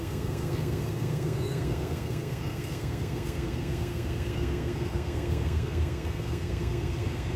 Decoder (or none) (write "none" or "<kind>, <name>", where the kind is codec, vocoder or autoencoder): codec, SNAC